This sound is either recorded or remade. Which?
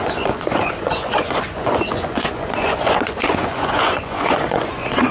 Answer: remade